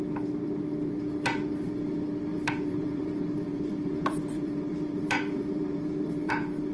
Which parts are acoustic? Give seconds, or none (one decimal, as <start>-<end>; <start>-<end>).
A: 0.0-2.3; 6.3-6.7